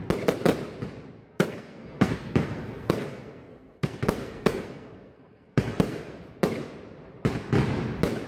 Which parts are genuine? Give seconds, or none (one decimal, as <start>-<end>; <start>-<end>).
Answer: 0.0-1.2; 6.2-8.3